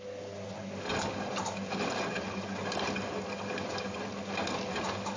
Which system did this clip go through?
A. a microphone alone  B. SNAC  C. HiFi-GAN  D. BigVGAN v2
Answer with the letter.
A